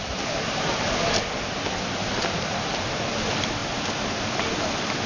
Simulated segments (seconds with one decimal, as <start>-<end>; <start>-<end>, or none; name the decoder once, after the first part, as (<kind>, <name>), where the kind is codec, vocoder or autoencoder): none